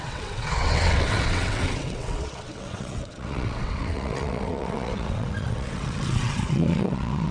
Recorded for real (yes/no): no